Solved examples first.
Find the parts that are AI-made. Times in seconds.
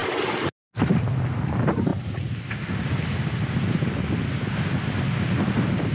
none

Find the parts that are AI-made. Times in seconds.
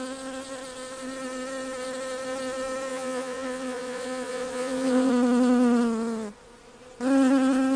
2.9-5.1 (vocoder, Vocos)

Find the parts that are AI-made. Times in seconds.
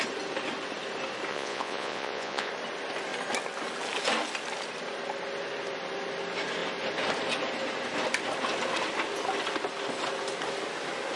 1.3-2.5 (vocoder, Vocos)